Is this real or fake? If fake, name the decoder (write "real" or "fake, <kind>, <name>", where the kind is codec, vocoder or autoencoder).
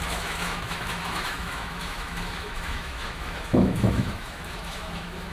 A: fake, autoencoder, DAC-VAE